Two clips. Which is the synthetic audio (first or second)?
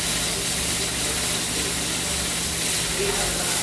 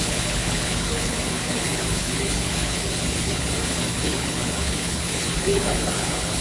second